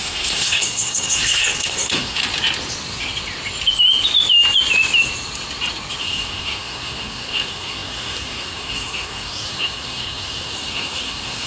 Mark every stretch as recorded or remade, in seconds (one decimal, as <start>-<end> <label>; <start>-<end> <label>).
0.0-2.2 remade; 2.2-6.0 recorded; 6.0-11.5 remade